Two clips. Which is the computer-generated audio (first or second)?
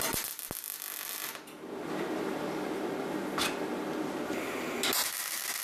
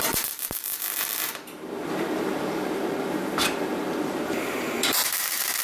second